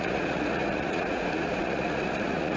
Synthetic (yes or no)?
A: yes